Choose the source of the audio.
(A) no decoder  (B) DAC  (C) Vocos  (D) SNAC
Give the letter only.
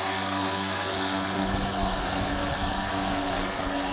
D